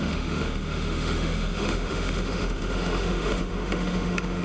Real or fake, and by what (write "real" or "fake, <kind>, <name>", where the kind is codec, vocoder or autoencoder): fake, autoencoder, DAC-VAE